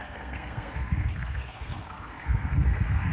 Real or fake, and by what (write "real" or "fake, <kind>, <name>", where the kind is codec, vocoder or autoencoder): fake, codec, SNAC